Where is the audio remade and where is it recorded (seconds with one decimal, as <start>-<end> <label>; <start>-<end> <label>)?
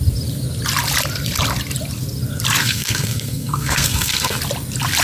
0.0-2.6 recorded; 2.6-4.4 remade; 4.4-5.0 recorded